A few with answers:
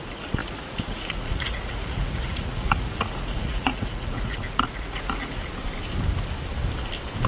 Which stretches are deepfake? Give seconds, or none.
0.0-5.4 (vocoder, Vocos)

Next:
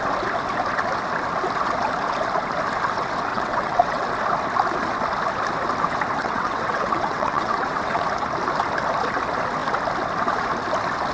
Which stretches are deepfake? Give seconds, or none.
3.3-4.1 (vocoder, WaveNeXt); 6.2-8.0

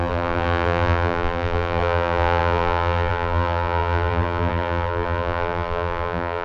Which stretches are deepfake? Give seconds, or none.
0.0-6.4 (vocoder, BigVGAN v2)

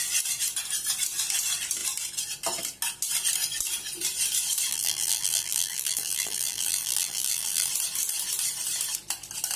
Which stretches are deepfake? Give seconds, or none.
4.7-7.7 (vocoder, BigVGAN v2)

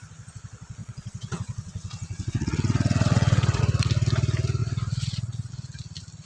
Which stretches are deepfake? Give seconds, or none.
0.8-3.6 (vocoder, WaveNeXt); 4.6-5.5

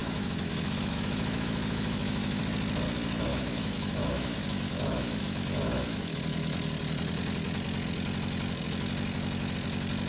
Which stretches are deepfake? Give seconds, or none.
0.0-2.4 (autoencoder, DAC-VAE); 3.3-6.2

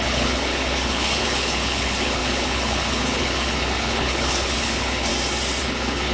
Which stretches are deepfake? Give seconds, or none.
0.0-5.1 (codec, HILCodec); 5.6-6.1